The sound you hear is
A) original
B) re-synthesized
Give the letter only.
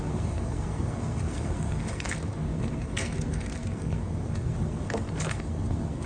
B